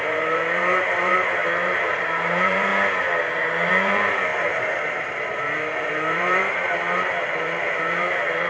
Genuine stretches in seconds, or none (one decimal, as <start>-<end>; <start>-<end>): 2.7-3.7